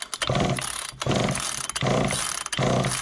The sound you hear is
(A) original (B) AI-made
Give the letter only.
A